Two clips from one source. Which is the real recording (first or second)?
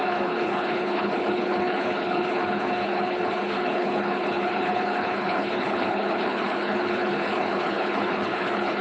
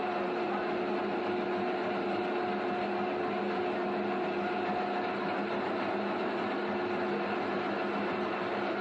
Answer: second